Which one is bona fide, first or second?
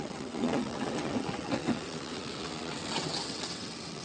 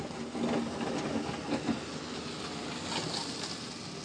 second